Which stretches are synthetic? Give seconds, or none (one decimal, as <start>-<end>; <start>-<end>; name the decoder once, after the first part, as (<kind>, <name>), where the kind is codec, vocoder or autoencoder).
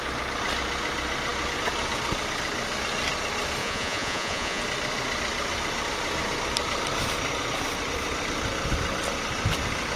3.6-4.6 (vocoder, Vocos)